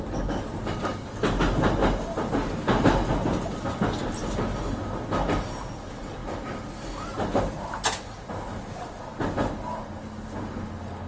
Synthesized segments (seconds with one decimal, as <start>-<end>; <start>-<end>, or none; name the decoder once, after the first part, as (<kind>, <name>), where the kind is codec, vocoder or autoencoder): none

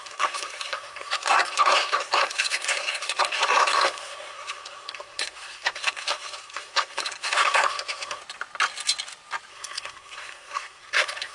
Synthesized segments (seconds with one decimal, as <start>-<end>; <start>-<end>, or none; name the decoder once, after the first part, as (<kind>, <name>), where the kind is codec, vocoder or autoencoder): 0.0-8.2 (codec, SNAC); 9.5-11.3

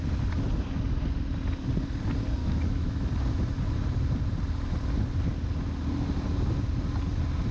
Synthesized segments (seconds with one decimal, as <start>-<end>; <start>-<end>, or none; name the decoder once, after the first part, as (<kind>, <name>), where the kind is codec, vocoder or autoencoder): 2.4-3.1 (autoencoder, DAC-VAE)